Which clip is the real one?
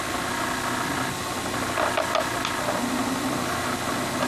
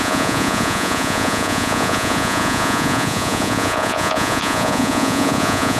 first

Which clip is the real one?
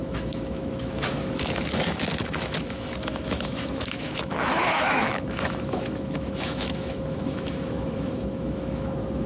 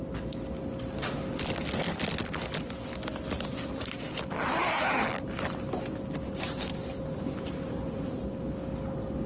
second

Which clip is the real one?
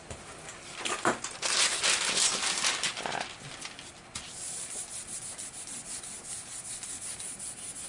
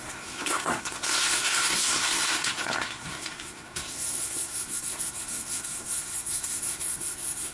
first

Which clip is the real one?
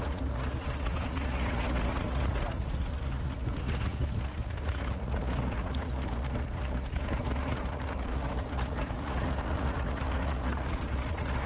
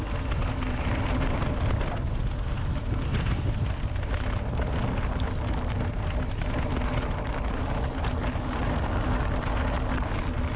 second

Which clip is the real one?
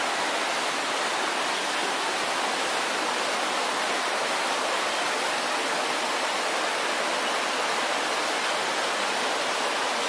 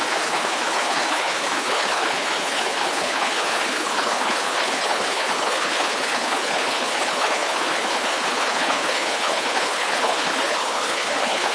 first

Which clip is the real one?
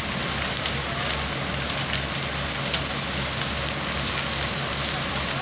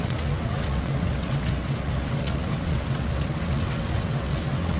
first